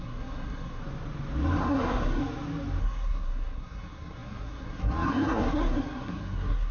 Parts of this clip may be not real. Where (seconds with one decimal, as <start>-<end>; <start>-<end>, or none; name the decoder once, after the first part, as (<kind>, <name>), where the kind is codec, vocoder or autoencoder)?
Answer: 0.0-0.8 (codec, SNAC); 1.6-2.2; 2.8-6.7